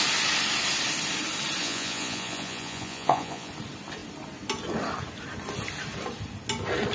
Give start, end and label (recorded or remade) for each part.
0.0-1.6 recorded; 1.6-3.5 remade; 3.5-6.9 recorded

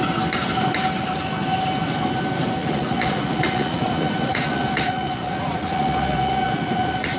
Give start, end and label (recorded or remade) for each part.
0.0-2.6 recorded; 2.6-7.2 remade

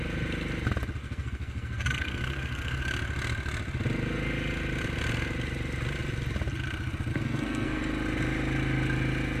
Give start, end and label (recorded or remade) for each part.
0.0-1.0 recorded; 1.0-2.8 remade; 2.8-7.1 recorded; 7.1-7.8 remade; 7.8-9.4 recorded

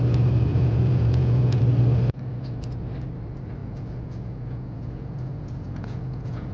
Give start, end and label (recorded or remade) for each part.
0.0-0.5 recorded; 0.5-1.6 remade; 1.6-3.6 recorded; 3.6-6.5 remade

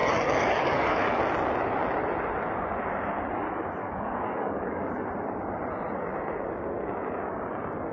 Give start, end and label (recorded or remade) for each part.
0.0-1.2 remade; 1.2-3.8 recorded; 3.8-4.9 remade; 4.9-7.9 recorded